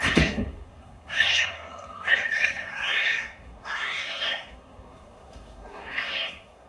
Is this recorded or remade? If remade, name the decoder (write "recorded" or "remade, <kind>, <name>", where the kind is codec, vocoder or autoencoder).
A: remade, codec, SNAC